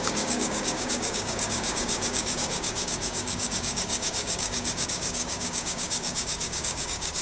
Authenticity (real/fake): fake